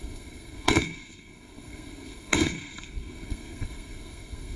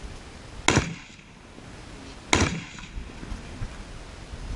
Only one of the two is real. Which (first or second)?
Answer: second